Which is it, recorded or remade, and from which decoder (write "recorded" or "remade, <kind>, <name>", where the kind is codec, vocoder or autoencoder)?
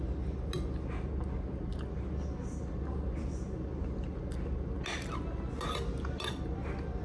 recorded